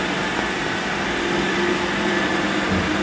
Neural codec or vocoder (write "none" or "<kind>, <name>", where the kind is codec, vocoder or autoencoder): vocoder, BigVGAN v2